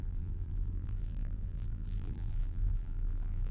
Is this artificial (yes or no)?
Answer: yes